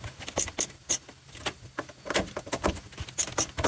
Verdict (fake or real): real